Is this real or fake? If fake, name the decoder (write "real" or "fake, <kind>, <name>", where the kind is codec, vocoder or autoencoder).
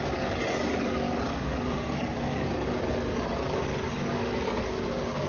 fake, codec, DAC